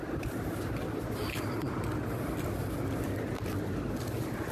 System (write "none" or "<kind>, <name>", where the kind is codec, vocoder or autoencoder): none